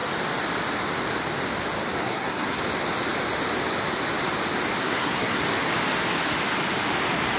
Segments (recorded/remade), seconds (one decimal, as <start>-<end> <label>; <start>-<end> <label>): 0.0-2.0 recorded; 2.0-2.6 remade; 2.6-4.8 recorded; 4.8-5.4 remade; 5.4-7.4 recorded